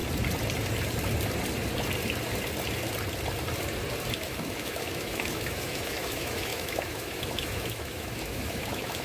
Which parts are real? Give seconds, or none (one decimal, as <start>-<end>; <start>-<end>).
0.0-4.1